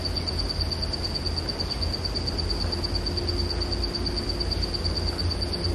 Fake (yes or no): no